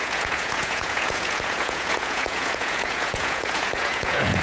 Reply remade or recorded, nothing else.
remade